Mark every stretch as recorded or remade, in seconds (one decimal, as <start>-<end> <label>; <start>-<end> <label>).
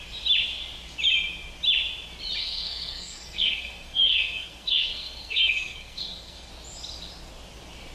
0.0-2.4 recorded; 2.4-6.5 remade; 6.5-7.9 recorded